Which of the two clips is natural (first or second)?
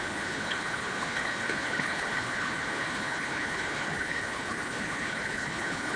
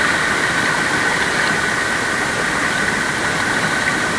second